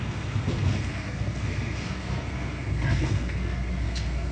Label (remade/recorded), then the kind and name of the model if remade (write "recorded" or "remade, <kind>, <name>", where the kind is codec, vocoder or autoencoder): remade, codec, SNAC